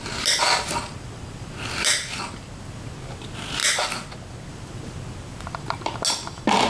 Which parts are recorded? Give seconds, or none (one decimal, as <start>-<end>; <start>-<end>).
0.0-6.7